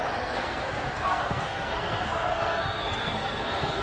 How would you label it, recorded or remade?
remade